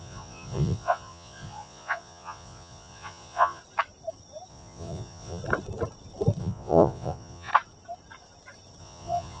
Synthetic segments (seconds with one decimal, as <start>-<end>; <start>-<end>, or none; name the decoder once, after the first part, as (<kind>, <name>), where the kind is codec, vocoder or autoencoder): 0.0-3.6 (vocoder, Vocos); 4.5-5.4; 6.4-7.5; 8.8-9.4